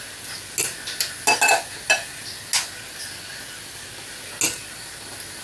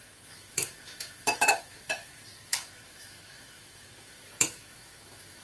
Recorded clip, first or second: first